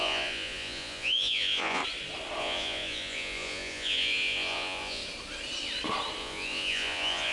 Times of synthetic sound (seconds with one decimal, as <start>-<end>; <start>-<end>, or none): 0.0-1.8; 2.4-5.0; 6.2-7.3